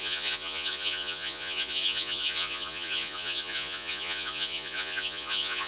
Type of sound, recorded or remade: remade